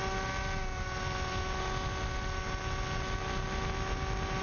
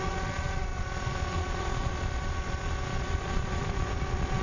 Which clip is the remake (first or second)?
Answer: second